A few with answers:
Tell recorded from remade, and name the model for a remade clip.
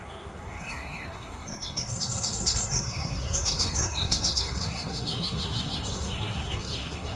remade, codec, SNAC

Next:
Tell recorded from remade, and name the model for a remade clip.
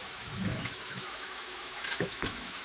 remade, autoencoder, DAC-VAE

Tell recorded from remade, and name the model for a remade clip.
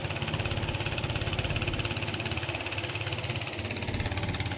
recorded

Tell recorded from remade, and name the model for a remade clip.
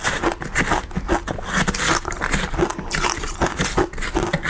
recorded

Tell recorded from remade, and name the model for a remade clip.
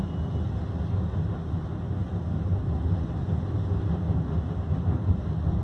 recorded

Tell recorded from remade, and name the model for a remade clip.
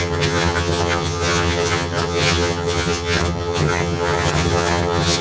remade, vocoder, HiFi-GAN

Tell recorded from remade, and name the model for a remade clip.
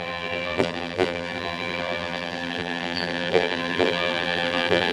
remade, vocoder, BigVGAN v2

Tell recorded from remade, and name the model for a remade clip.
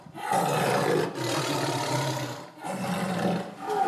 recorded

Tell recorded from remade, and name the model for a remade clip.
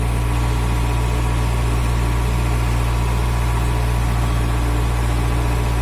recorded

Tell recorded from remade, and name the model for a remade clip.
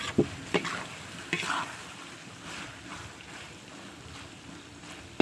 recorded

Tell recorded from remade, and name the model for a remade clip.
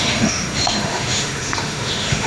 remade, autoencoder, DAC-VAE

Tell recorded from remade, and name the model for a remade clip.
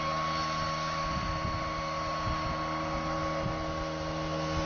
recorded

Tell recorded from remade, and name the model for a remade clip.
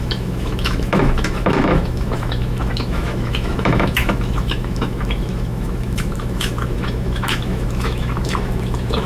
remade, autoencoder, DAC-VAE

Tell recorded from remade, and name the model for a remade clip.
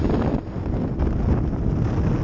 recorded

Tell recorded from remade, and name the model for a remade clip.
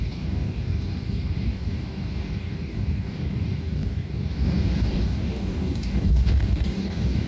remade, codec, DAC